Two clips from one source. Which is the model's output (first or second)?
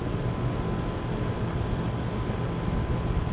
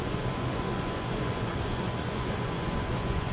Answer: second